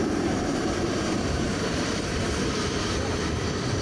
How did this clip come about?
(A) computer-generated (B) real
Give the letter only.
A